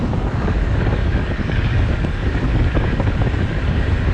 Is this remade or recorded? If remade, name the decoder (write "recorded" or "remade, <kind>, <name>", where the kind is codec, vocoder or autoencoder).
remade, codec, DAC